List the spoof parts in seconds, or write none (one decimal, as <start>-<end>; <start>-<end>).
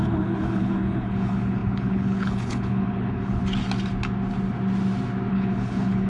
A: 0.0-3.4; 5.3-6.1